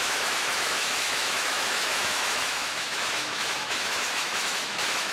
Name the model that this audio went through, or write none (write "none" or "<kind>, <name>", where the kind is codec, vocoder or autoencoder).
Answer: autoencoder, DAC-VAE